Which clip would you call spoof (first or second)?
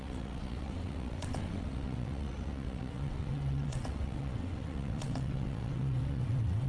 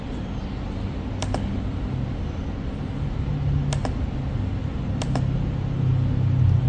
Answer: first